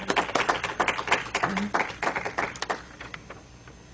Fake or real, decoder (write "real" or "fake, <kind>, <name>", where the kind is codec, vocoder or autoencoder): real